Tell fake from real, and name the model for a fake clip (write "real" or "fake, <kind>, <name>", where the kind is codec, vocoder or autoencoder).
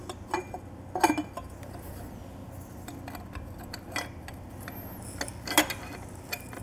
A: real